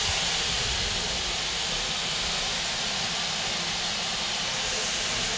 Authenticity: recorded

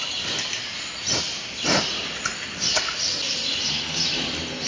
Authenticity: recorded